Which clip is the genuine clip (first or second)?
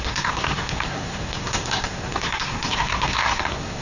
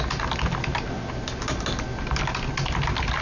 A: second